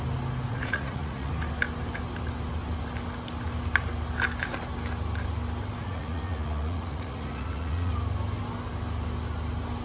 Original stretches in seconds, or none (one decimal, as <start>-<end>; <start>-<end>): 0.0-0.5; 1.3-5.8; 7.9-9.8

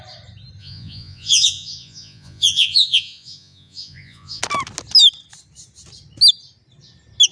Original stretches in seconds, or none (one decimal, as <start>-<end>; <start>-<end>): 0.0-0.6; 4.4-7.3